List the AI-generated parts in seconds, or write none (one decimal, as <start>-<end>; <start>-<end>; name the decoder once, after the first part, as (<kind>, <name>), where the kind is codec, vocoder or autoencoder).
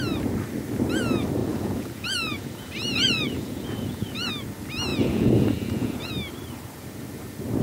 1.4-4.3 (vocoder, Vocos); 4.9-6.1